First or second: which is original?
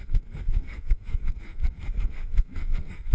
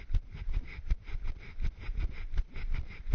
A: second